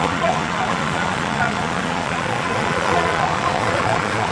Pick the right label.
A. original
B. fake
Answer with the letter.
B